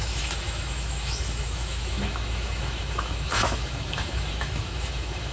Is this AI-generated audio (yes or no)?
yes